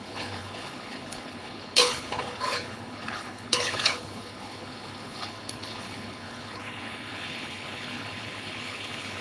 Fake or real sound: fake